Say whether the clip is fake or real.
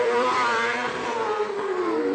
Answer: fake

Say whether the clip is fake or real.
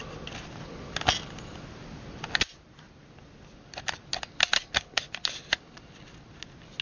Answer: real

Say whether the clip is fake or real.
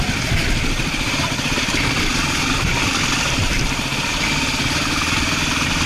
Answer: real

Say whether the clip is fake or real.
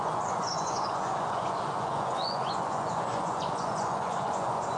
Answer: fake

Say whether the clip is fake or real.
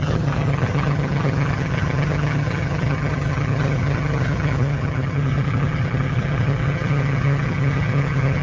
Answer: fake